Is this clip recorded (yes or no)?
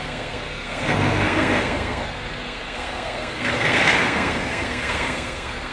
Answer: no